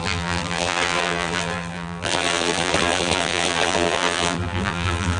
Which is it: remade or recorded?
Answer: remade